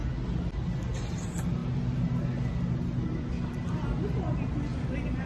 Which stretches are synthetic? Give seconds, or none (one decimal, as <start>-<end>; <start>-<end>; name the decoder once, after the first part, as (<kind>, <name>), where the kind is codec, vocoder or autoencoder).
none